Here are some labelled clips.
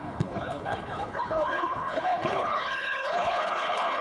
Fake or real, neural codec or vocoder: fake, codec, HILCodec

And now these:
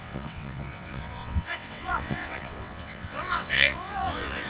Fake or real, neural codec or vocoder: fake, vocoder, WaveNeXt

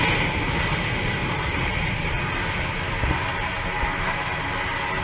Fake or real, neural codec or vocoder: real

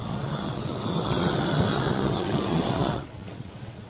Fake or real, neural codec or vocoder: fake, vocoder, WaveNeXt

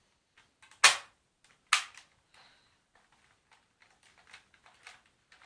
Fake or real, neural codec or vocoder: real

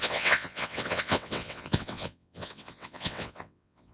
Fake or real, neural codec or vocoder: fake, vocoder, WaveNeXt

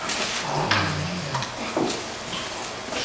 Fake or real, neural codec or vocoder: real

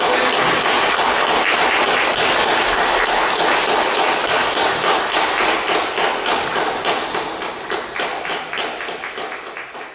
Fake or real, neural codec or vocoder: real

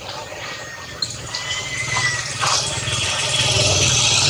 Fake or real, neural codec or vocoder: fake, vocoder, BigVGAN v2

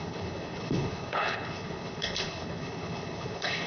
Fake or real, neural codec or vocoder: fake, codec, HILCodec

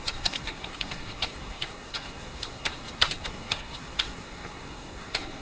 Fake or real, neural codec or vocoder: fake, codec, SNAC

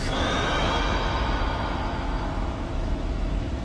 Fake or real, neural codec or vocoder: fake, autoencoder, DAC-VAE